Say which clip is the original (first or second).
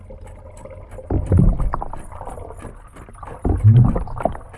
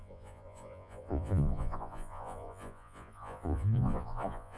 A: first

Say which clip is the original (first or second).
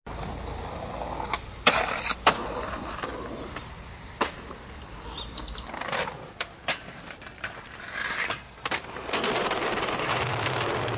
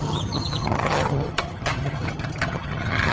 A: first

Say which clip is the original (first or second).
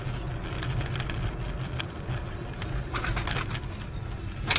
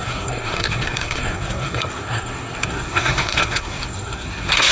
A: first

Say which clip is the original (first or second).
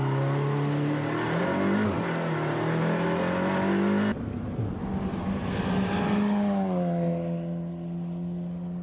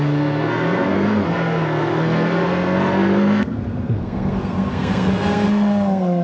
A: first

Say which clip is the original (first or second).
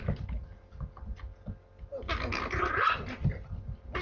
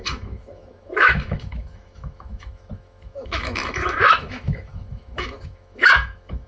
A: first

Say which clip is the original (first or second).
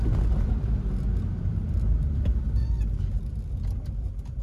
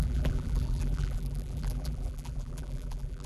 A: first